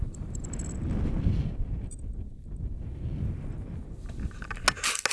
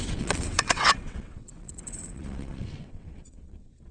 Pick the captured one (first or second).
first